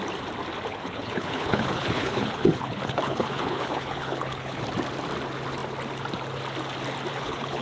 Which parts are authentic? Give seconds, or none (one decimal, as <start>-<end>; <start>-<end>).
0.0-0.7; 4.6-7.1